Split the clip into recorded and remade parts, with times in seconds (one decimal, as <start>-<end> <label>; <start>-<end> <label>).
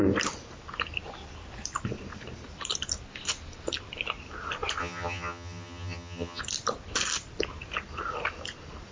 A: 0.0-4.8 recorded; 4.8-6.4 remade; 6.4-8.9 recorded